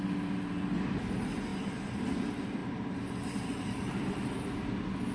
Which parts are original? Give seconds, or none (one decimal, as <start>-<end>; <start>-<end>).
0.0-1.5; 2.1-2.6; 4.6-5.1

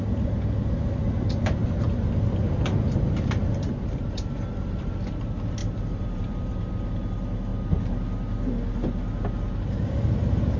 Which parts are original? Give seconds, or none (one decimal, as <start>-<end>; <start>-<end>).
0.0-5.6; 6.7-10.6

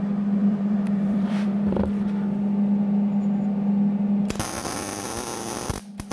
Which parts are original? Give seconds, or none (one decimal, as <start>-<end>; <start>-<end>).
0.0-0.4; 1.8-6.1

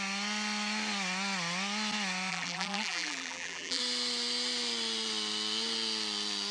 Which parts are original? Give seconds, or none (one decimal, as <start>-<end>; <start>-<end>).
0.0-2.3; 3.8-6.5